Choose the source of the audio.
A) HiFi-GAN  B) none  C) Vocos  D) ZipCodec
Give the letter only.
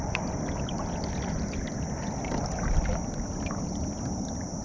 B